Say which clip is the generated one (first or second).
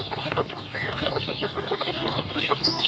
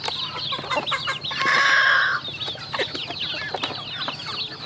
first